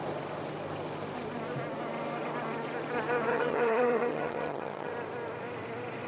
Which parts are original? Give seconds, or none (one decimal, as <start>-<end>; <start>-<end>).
0.0-3.3; 4.9-6.1